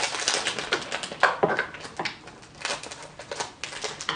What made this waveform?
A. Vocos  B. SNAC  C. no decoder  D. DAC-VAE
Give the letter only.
C